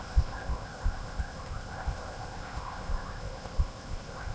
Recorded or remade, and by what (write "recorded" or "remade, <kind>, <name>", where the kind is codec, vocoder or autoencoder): remade, codec, ZipCodec